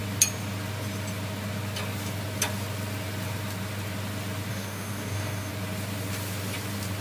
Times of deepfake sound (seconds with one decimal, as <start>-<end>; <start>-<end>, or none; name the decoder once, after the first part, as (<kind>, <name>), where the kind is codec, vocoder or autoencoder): 4.5-5.5 (codec, DAC)